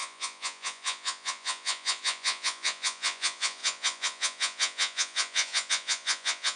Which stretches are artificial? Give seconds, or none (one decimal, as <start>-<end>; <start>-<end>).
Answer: 0.0-6.6